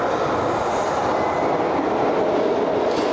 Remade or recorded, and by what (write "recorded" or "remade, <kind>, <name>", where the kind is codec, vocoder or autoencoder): recorded